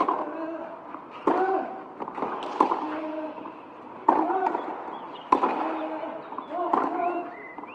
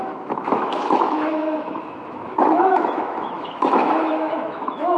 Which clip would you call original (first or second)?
first